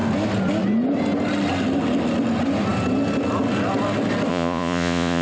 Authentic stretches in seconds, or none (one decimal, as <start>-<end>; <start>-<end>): 0.0-4.3